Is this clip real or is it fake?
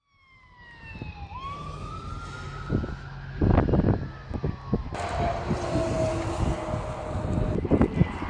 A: real